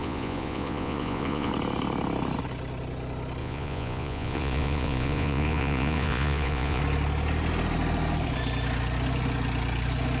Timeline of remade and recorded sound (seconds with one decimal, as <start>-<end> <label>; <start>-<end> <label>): 0.0-1.5 remade; 1.5-3.4 recorded; 3.4-6.8 remade; 6.8-10.2 recorded